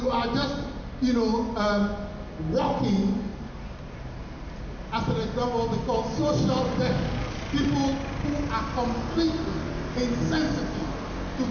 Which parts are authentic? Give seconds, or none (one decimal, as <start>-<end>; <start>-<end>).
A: 0.0-11.5